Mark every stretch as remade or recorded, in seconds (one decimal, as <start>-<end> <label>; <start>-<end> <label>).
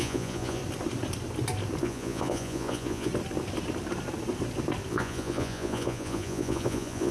0.0-0.6 remade; 0.6-1.8 recorded; 1.8-3.1 remade; 3.1-4.9 recorded; 4.9-7.1 remade